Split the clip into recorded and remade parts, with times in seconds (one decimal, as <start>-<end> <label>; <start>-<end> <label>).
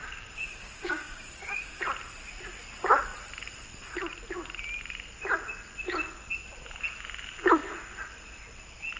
0.0-1.8 remade; 1.8-9.0 recorded